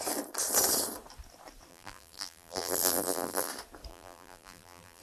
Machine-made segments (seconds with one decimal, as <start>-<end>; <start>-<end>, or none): 1.7-3.5; 3.9-5.0